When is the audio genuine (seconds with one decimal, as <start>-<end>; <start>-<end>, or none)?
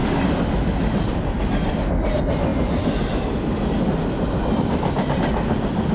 0.0-5.9